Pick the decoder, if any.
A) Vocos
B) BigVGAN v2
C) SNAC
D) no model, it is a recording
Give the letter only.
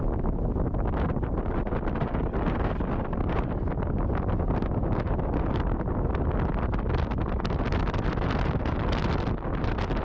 D